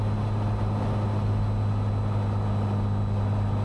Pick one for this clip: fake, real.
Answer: real